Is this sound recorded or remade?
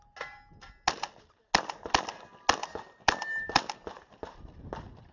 recorded